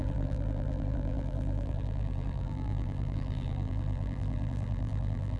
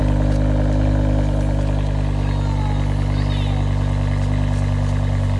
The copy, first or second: first